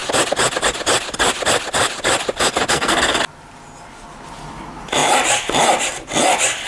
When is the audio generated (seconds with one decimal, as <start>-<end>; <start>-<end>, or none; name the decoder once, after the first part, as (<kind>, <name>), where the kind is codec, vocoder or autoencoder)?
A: 2.7-3.2 (codec, SNAC)